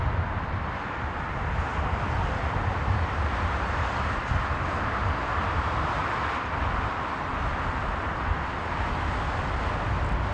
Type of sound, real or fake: real